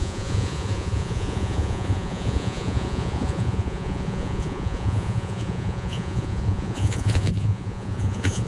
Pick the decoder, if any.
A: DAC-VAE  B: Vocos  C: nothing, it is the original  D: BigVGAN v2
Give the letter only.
B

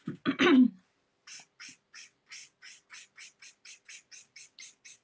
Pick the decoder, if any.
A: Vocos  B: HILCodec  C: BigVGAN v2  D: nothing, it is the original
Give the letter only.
D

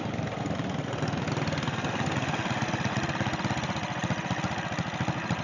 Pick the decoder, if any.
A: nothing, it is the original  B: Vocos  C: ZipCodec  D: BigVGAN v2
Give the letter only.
A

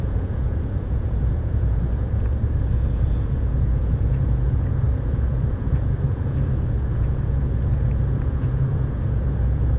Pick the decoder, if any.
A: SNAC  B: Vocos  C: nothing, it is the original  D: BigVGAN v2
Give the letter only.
B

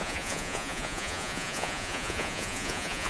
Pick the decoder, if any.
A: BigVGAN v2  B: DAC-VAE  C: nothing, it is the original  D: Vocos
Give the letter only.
D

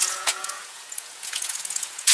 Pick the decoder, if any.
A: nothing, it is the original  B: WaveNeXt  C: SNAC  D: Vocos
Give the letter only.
D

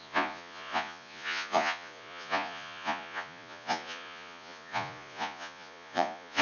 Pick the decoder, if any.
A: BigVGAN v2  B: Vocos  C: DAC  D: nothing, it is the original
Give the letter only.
B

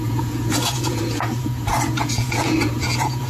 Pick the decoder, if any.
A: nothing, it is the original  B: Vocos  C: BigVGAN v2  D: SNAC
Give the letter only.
B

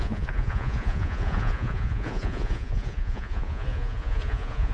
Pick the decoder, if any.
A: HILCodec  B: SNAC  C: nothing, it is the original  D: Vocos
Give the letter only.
D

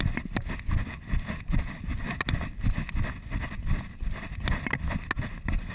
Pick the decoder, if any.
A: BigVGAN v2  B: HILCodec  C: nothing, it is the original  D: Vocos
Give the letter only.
C